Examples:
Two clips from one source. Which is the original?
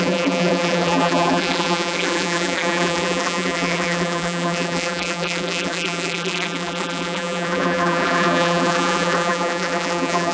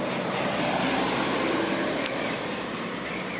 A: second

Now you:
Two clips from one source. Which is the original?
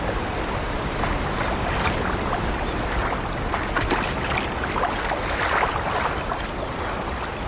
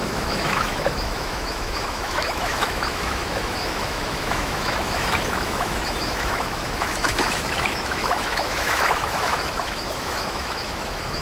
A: first